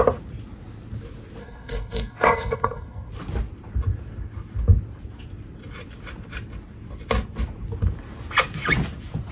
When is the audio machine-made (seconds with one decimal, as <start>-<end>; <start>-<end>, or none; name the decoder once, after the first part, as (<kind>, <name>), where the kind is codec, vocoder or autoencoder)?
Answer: 1.4-3.1 (codec, SNAC)